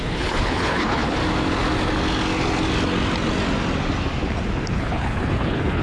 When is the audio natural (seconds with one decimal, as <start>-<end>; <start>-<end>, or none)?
1.2-4.7